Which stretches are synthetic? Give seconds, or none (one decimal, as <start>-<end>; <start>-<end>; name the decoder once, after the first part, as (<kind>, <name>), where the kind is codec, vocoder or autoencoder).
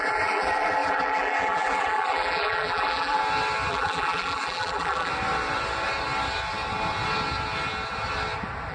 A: 0.0-3.2 (vocoder, BigVGAN v2); 3.7-5.1